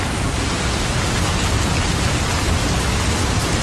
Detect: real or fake real